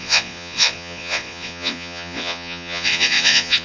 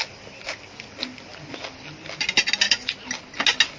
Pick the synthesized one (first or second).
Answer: first